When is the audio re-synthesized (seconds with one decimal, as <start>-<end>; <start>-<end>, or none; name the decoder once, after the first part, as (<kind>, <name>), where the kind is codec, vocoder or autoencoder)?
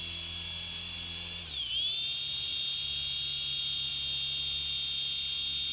none